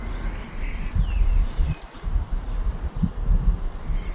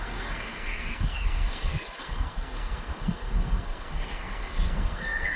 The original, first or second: first